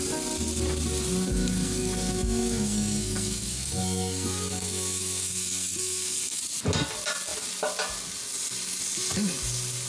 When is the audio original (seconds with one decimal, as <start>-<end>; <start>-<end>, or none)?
0.0-1.3; 6.4-9.9